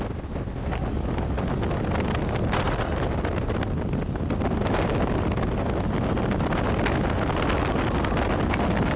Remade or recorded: recorded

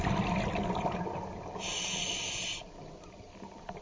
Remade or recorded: recorded